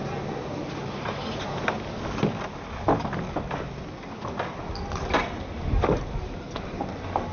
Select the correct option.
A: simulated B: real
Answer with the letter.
B